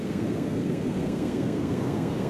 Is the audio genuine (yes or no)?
no